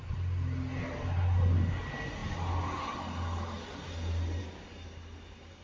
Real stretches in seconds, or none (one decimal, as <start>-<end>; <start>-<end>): 0.0-5.6